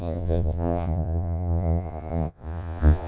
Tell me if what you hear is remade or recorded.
remade